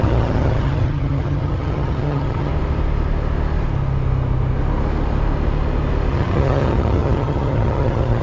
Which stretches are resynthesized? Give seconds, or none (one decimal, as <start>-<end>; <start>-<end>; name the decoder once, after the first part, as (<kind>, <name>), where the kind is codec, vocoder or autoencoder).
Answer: 0.0-2.5 (vocoder, HiFi-GAN); 6.1-8.2